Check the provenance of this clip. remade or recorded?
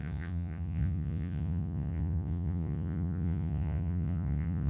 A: remade